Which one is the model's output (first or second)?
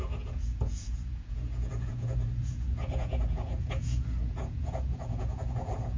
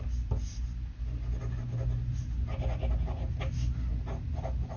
first